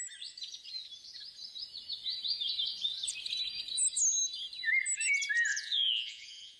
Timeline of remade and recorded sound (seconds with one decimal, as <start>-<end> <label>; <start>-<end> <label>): 0.0-5.5 recorded; 5.5-6.6 remade